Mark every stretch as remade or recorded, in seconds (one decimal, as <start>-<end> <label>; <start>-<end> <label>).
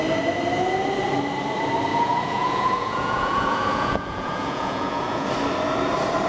0.0-1.9 recorded; 1.9-5.3 remade; 5.3-6.3 recorded